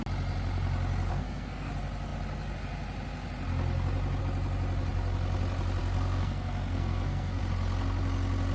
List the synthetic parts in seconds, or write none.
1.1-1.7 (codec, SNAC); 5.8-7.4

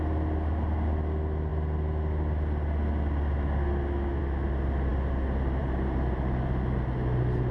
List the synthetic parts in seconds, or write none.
none

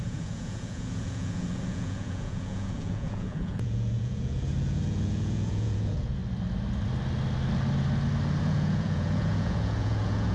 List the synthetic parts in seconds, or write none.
0.0-6.2 (vocoder, Vocos); 8.4-10.3

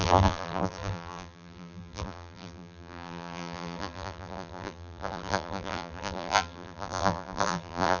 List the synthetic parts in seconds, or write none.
0.0-8.0 (vocoder, BigVGAN v2)

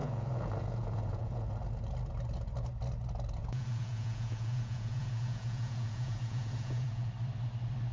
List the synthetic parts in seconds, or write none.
0.0-1.5 (vocoder, Vocos); 3.4-7.1

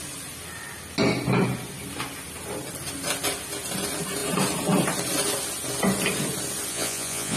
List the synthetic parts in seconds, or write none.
6.7-7.4 (vocoder, Vocos)

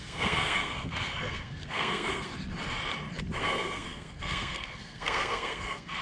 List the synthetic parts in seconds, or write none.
0.0-2.3 (codec, SNAC); 3.4-6.0

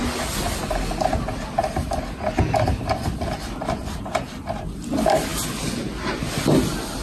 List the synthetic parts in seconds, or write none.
none